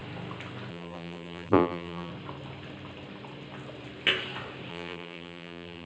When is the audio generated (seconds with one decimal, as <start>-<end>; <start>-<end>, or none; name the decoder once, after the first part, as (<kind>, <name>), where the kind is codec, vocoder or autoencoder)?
0.7-2.1 (vocoder, BigVGAN v2); 4.7-5.9